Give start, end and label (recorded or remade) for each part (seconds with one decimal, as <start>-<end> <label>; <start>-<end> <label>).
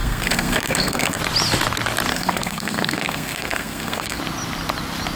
0.0-1.2 remade; 1.2-2.1 recorded; 2.1-4.2 remade; 4.2-5.2 recorded